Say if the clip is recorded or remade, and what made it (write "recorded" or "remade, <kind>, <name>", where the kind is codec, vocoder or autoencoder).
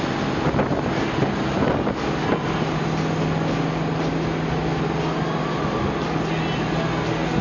recorded